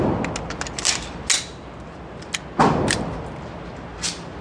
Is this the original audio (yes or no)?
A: yes